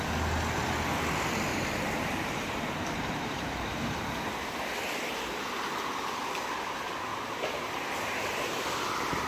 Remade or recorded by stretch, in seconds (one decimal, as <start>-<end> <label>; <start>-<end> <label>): 0.0-1.5 recorded; 1.5-4.0 remade; 4.0-7.1 recorded; 7.1-8.6 remade; 8.6-9.3 recorded